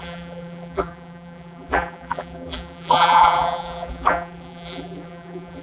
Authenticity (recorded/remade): remade